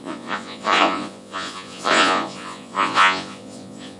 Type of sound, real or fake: fake